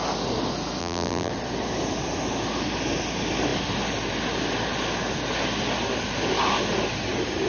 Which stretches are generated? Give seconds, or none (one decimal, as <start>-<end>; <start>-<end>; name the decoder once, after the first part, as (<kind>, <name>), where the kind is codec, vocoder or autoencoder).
0.8-1.3 (vocoder, BigVGAN v2)